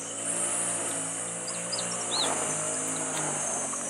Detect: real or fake real